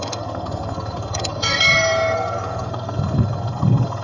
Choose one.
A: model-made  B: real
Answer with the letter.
A